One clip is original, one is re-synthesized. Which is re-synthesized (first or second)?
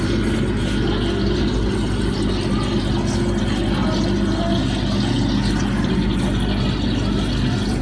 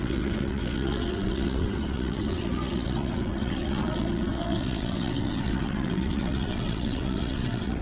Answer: second